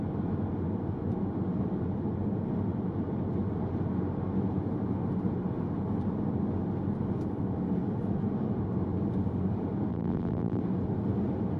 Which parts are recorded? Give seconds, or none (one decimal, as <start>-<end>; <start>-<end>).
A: 0.0-9.9; 10.6-11.6